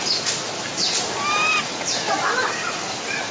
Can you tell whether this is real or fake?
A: real